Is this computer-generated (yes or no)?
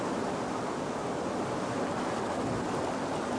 no